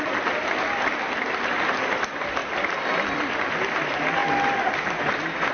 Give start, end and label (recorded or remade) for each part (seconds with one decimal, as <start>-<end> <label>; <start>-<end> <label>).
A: 0.0-5.5 recorded